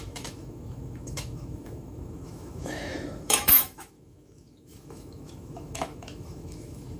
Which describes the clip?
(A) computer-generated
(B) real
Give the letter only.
A